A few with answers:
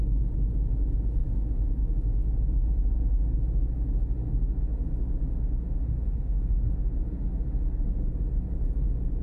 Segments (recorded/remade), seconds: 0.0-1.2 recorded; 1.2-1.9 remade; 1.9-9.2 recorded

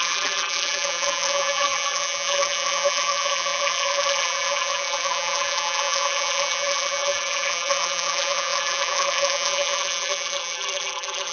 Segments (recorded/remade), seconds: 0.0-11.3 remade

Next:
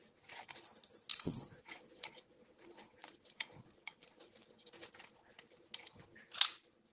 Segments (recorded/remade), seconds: 0.0-1.1 recorded; 1.1-4.2 remade; 4.2-6.9 recorded

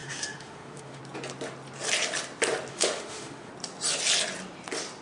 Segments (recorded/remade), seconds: 0.0-1.0 remade; 1.0-2.7 recorded; 2.7-3.5 remade; 3.5-5.0 recorded

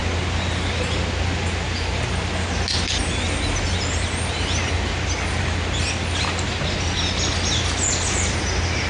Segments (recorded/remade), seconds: 0.0-8.9 recorded